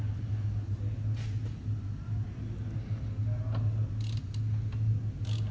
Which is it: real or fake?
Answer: real